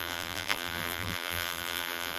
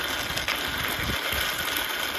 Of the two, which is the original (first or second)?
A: second